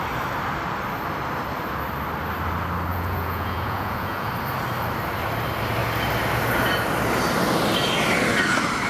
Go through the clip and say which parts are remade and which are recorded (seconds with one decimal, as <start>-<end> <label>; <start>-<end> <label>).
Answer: 0.0-2.9 recorded; 2.9-4.3 remade; 4.3-8.9 recorded